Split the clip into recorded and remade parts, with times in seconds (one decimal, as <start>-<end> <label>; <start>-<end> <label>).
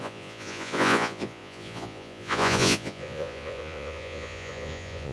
0.0-5.1 remade